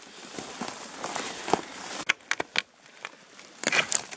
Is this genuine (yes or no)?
yes